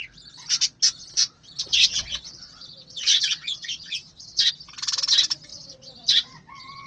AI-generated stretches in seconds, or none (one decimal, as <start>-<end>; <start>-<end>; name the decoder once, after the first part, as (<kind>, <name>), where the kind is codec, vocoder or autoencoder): 1.7-4.5 (vocoder, WaveNeXt); 5.5-6.9